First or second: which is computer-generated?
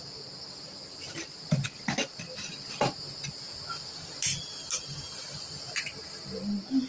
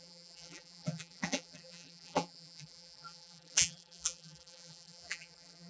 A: second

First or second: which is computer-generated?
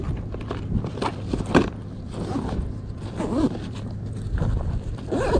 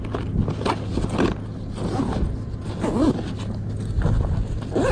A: first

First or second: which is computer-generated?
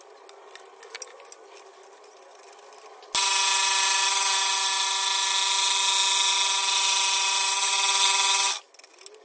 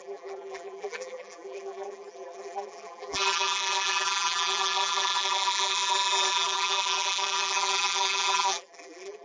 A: second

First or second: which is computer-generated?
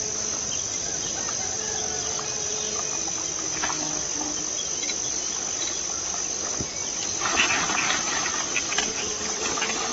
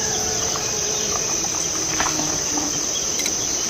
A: second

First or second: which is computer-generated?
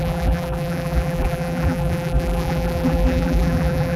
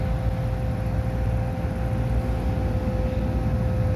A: first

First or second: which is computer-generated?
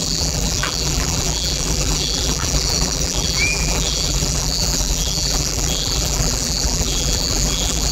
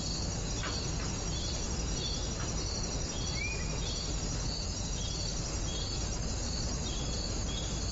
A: first